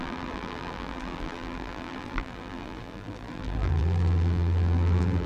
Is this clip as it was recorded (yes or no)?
no